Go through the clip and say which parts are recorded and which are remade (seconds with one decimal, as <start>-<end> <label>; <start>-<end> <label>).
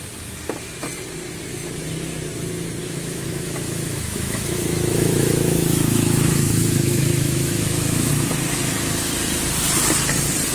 0.0-2.8 recorded; 2.8-8.1 remade; 8.1-10.5 recorded